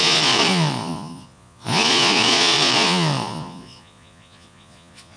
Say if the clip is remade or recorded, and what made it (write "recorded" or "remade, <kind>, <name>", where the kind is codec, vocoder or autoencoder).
remade, vocoder, Vocos